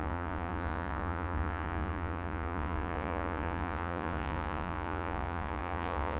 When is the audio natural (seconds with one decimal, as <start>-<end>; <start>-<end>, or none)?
none